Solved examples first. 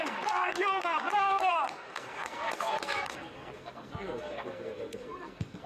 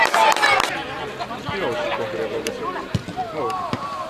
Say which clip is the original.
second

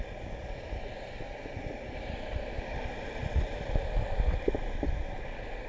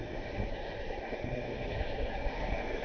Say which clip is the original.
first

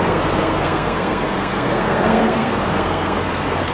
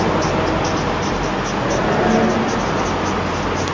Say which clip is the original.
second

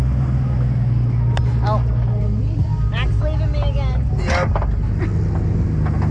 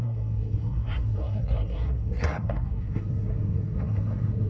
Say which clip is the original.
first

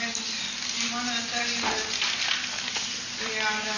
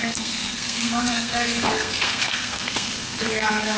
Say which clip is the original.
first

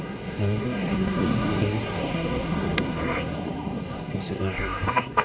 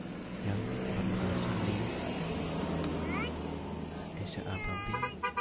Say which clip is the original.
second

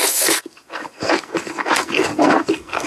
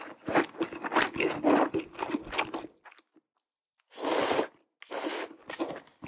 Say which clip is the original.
second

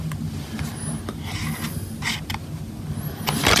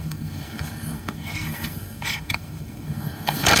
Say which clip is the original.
first